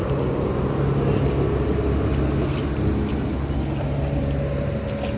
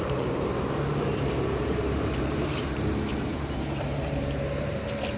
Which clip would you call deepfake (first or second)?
second